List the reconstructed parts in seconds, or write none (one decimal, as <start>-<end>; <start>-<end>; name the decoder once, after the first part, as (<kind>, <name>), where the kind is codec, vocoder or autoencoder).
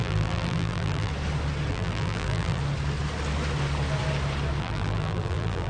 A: 0.0-1.1 (vocoder, BigVGAN v2); 1.7-2.6; 4.6-5.7